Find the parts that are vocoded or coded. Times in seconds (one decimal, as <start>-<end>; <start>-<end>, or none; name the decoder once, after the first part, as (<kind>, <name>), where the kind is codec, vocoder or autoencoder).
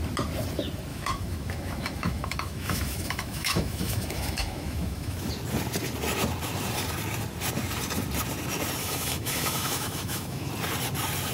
0.9-5.3 (autoencoder, DAC-VAE); 8.8-10.5